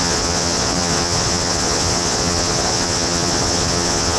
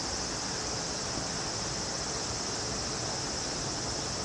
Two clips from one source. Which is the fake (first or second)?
first